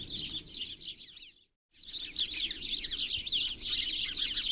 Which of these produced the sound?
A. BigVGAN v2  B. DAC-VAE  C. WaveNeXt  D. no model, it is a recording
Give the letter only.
D